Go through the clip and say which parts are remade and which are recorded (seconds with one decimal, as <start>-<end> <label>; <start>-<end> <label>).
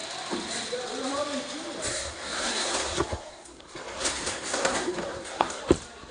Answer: 0.0-1.9 recorded; 1.9-5.6 remade; 5.6-6.1 recorded